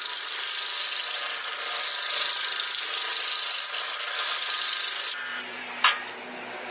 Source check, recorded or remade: recorded